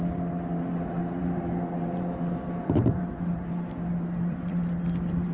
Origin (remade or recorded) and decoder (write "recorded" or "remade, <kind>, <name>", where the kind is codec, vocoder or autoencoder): remade, vocoder, BigVGAN v2